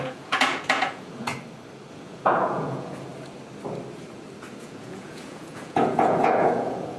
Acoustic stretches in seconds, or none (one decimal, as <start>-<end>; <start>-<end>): 1.3-1.9; 3.1-4.6